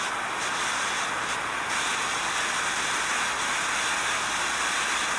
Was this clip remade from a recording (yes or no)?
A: no